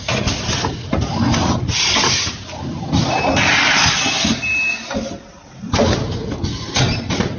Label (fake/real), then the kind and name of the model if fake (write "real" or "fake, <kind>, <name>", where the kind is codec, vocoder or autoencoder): real